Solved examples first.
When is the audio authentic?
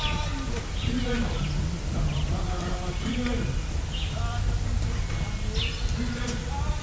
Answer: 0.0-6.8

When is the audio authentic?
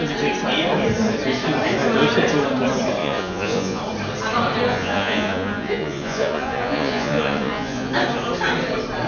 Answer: 0.0-3.0; 3.8-4.7; 7.9-9.1